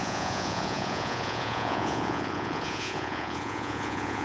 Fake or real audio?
fake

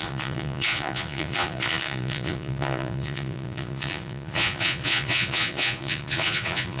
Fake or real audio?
fake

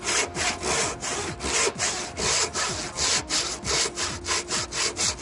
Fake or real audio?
real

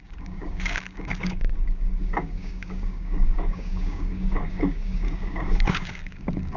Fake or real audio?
fake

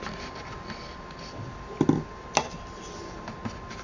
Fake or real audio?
real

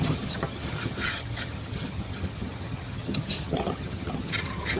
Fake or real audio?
fake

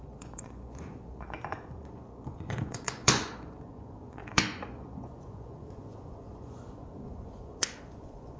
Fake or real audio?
fake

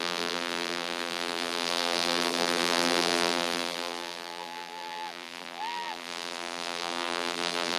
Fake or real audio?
fake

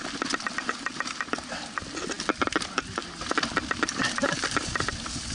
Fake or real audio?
real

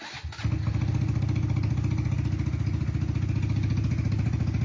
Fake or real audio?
real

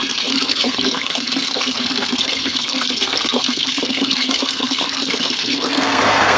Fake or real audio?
fake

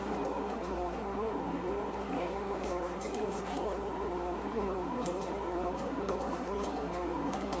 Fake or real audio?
fake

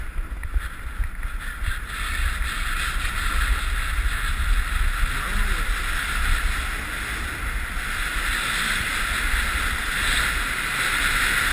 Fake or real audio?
real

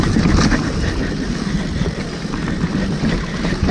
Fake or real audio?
fake